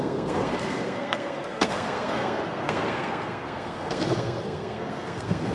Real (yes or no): no